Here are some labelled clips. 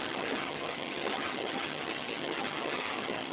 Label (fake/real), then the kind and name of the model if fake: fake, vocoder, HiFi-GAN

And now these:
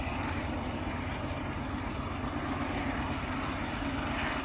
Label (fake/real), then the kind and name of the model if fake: real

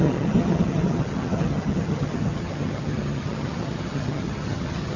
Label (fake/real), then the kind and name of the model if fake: fake, vocoder, HiFi-GAN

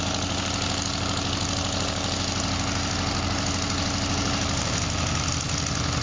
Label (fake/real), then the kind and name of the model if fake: real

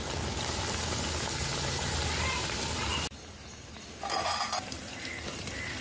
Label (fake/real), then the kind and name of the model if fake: real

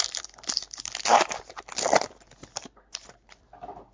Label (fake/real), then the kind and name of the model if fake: real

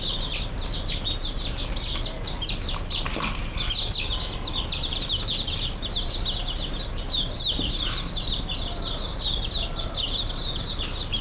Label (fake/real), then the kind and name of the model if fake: real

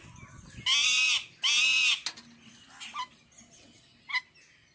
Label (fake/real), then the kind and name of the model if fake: real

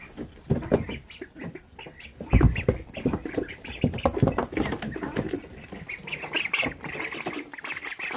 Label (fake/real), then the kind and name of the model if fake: real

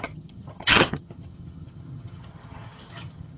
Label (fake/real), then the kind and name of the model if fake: fake, vocoder, HiFi-GAN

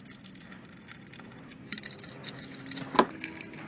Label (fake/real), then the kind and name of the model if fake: real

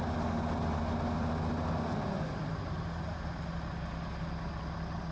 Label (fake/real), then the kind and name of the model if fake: real